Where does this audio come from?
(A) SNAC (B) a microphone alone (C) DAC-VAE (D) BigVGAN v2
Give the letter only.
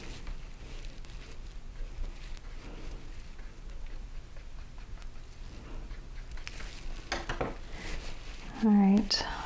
B